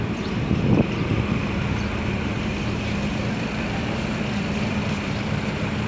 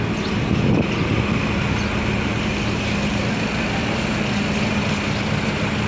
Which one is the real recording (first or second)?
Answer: second